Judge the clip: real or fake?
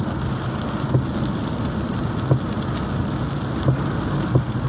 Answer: real